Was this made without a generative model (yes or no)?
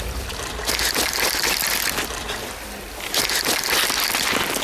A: yes